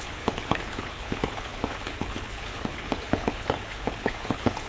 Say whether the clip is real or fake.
fake